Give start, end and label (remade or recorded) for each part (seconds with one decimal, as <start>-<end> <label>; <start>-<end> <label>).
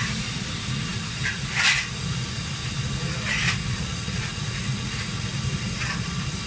0.0-3.6 recorded; 3.6-5.4 remade; 5.4-6.5 recorded